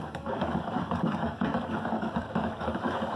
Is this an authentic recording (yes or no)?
no